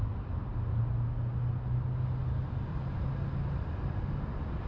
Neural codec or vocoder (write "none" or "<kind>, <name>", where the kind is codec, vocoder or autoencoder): none